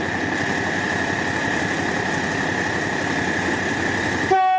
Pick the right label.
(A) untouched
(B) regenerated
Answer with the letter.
A